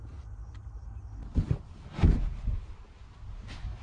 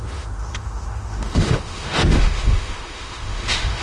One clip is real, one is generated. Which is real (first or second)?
first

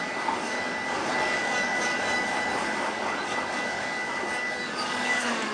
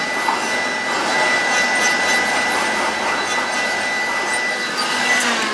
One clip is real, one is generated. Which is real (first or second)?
second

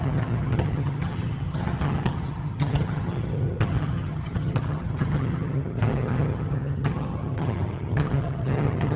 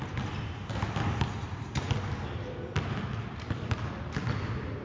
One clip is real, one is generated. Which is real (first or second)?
second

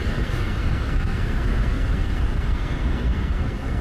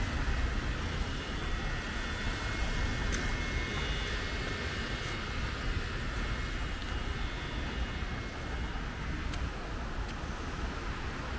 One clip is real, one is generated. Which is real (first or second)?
second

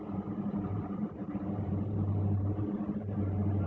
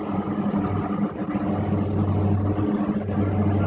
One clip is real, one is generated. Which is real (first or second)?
second